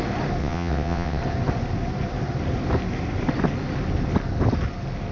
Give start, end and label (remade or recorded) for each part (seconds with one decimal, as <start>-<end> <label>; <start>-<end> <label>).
0.0-0.4 recorded; 0.4-1.2 remade; 1.2-5.1 recorded